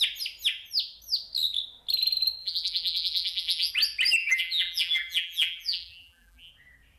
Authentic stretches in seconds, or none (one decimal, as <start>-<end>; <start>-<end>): 0.0-2.4; 3.7-4.2; 6.5-7.0